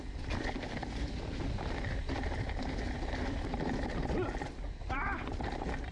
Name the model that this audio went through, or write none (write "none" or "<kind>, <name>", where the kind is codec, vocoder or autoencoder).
none